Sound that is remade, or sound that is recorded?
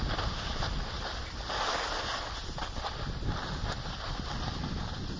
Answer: recorded